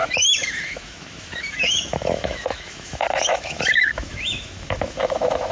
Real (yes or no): no